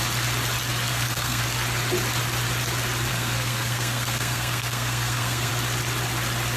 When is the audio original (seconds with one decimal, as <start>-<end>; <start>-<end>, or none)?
0.0-0.9; 1.4-3.1; 5.5-6.6